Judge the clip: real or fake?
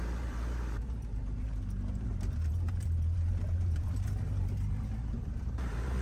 fake